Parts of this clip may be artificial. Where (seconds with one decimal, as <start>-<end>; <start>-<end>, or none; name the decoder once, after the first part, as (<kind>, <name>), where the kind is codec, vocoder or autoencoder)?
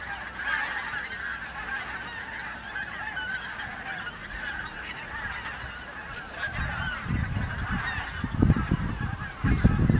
4.2-5.1 (vocoder, Vocos)